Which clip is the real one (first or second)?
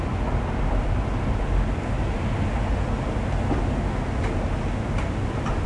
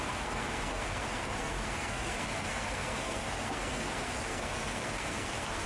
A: first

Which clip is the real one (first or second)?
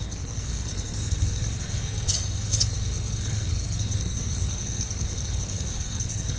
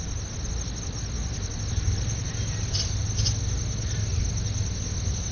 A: second